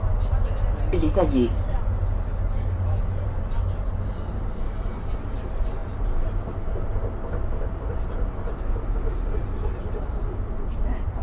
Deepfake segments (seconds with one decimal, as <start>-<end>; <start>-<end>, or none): none